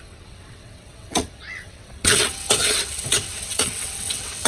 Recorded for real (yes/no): no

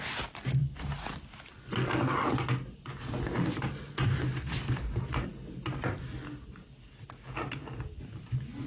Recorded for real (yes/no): yes